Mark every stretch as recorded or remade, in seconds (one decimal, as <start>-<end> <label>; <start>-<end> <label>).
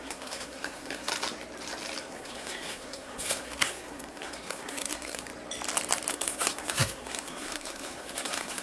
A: 0.0-1.1 remade; 1.1-2.0 recorded; 2.0-5.3 remade; 5.3-6.1 recorded; 6.1-8.6 remade